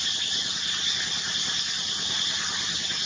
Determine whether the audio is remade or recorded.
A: recorded